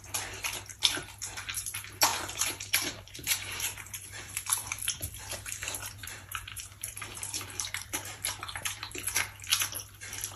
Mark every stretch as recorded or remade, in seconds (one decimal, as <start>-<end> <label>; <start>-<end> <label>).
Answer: 0.0-2.1 recorded; 2.1-4.7 remade; 4.7-6.0 recorded; 6.0-8.9 remade; 8.9-10.4 recorded